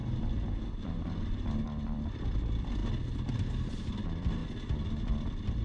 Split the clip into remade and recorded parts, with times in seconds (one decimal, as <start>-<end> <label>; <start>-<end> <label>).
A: 0.0-2.8 remade; 2.8-3.9 recorded; 3.9-4.4 remade; 4.4-5.0 recorded; 5.0-5.6 remade